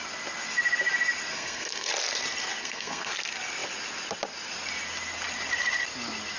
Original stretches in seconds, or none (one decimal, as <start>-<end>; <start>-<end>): 0.0-1.3; 1.9-2.6; 3.1-6.4